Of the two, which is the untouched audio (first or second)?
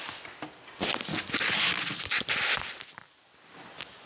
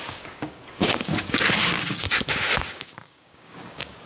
first